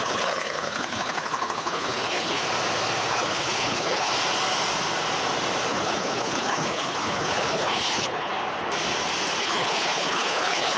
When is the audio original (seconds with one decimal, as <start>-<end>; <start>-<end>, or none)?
2.4-3.1; 4.1-5.7; 8.3-9.4